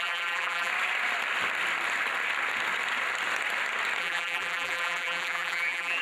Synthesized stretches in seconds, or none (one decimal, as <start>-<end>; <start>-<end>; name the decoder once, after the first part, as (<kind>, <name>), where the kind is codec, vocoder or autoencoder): 0.0-0.7 (vocoder, BigVGAN v2); 4.0-6.0